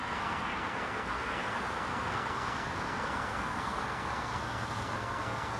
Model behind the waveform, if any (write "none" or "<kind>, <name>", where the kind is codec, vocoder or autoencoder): codec, SNAC